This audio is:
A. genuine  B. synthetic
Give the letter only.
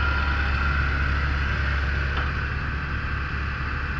A